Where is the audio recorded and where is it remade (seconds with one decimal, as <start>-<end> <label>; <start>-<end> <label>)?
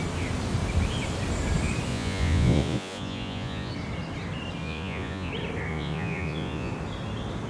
0.0-1.9 recorded; 1.9-3.7 remade; 3.7-4.6 recorded; 4.6-5.3 remade; 5.3-5.7 recorded; 5.7-6.7 remade; 6.7-7.5 recorded